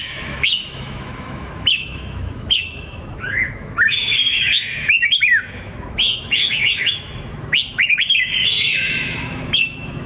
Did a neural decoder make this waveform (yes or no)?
yes